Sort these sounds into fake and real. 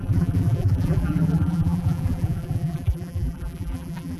fake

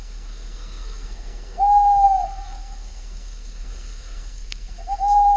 fake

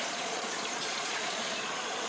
fake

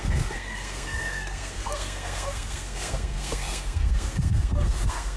fake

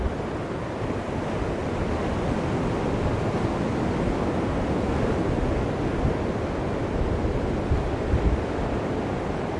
real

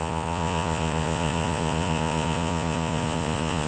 fake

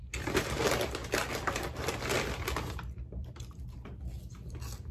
real